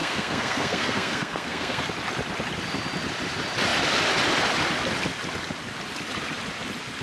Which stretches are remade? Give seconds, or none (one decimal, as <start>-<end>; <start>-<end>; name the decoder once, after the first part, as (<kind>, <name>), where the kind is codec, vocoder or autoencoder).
0.0-1.9 (codec, SNAC)